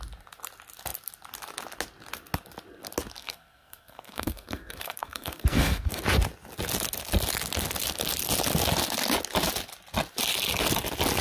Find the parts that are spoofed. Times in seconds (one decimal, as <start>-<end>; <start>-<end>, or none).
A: 3.2-6.0